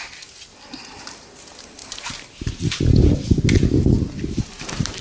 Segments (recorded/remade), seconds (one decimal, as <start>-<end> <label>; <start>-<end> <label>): 0.0-1.8 recorded; 1.8-3.5 remade; 3.5-5.0 recorded